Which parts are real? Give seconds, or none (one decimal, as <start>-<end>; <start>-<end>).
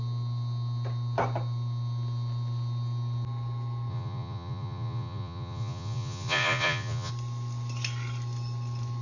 0.0-3.9; 7.1-9.0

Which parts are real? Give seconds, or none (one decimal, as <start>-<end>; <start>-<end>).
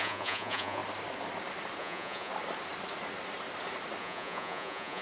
0.8-1.8; 2.3-4.0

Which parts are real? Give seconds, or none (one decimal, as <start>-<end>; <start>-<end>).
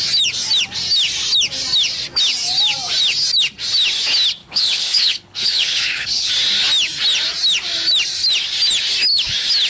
0.0-4.4; 6.3-9.7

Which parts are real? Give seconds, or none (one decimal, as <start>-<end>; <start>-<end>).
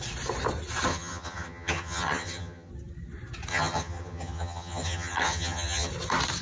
0.0-0.9; 2.7-3.5; 5.9-6.4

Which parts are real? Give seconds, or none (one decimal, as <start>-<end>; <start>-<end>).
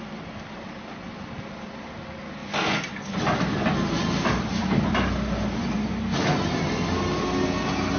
0.0-8.0